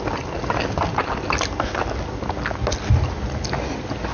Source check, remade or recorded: recorded